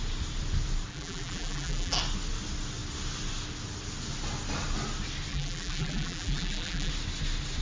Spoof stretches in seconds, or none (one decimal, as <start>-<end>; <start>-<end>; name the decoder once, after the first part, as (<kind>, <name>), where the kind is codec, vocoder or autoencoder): 0.9-2.0 (vocoder, BigVGAN v2); 5.3-6.9